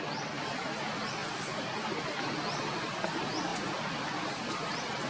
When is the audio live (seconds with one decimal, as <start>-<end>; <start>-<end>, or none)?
0.0-1.2; 1.7-5.1

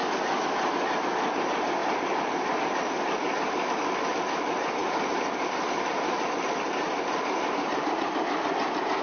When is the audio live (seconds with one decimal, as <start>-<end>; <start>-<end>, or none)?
0.0-4.8; 8.1-9.0

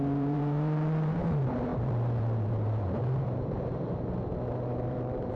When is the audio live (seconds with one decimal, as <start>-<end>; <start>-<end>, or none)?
none

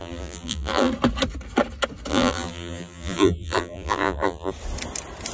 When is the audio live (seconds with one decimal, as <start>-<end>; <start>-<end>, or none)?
0.9-2.1; 4.5-5.3